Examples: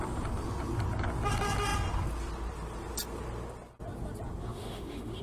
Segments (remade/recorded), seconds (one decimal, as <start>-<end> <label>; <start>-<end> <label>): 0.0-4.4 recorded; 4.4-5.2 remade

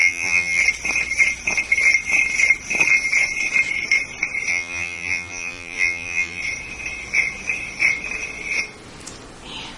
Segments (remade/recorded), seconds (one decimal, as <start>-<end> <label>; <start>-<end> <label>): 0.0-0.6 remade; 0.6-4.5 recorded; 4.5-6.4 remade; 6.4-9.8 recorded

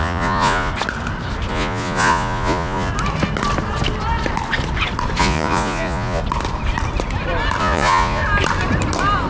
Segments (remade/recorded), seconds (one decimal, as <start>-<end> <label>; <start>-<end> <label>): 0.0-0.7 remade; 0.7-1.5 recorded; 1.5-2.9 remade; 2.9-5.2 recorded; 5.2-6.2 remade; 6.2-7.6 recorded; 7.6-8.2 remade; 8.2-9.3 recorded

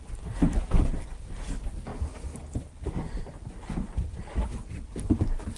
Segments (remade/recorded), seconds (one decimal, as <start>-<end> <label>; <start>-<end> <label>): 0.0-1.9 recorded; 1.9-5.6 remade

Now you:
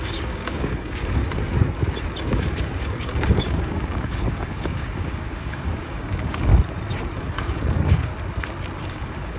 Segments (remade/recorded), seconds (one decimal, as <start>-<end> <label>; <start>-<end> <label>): 0.0-1.2 remade; 1.2-2.2 recorded; 2.2-6.5 remade; 6.5-7.2 recorded; 7.2-8.1 remade; 8.1-8.9 recorded; 8.9-9.4 remade

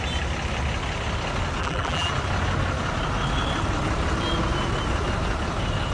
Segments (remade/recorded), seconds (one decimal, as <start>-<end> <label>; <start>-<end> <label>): 0.0-1.6 recorded; 1.6-2.1 remade; 2.1-5.9 recorded